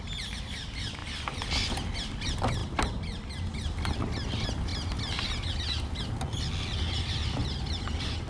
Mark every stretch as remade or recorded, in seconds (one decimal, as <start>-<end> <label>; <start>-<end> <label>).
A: 0.0-8.3 recorded